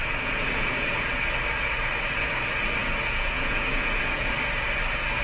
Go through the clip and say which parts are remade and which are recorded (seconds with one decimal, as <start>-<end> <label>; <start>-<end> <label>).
0.0-1.1 remade; 1.1-2.8 recorded; 2.8-4.3 remade; 4.3-5.2 recorded